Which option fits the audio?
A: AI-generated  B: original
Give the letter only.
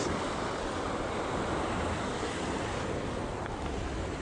B